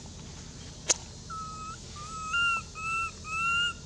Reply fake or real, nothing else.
real